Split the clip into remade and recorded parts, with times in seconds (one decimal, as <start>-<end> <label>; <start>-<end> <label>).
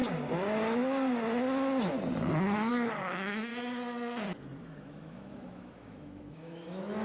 0.0-2.7 recorded; 2.7-3.5 remade; 3.5-4.6 recorded; 4.6-7.0 remade